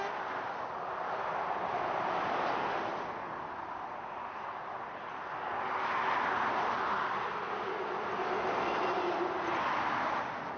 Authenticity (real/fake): real